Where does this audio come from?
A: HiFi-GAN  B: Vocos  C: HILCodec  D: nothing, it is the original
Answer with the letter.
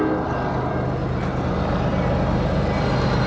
D